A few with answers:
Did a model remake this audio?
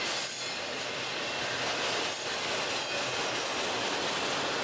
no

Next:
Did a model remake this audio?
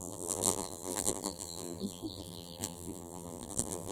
yes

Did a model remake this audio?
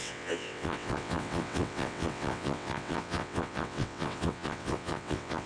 yes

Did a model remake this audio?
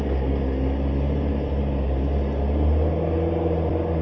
no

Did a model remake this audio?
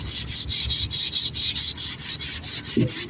no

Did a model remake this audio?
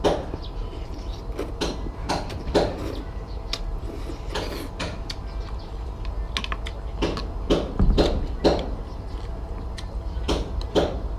no